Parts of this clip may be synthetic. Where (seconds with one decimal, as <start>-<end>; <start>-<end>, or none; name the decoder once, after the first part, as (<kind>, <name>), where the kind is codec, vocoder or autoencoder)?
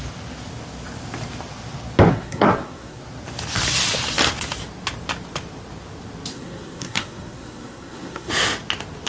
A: 2.1-3.0 (codec, SNAC); 6.3-8.3